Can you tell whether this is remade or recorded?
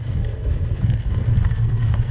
remade